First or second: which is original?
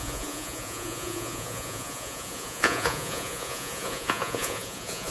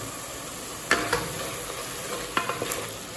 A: second